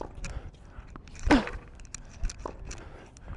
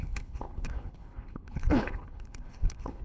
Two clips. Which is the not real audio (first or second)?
second